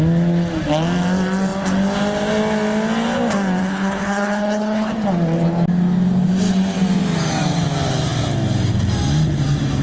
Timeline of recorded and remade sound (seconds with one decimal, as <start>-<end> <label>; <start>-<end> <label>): 0.0-3.6 recorded; 3.6-4.9 remade; 4.9-9.8 recorded